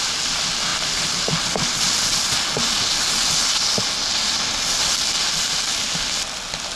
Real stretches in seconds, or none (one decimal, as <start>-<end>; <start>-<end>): 0.0-6.8